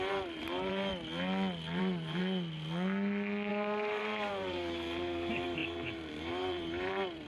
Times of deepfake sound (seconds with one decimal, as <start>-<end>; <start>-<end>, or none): 0.0-0.9; 1.8-2.2; 3.5-7.3